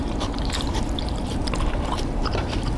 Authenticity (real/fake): fake